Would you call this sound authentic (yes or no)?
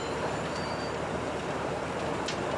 no